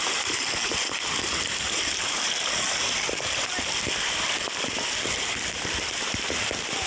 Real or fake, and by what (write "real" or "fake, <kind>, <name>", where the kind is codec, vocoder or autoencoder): real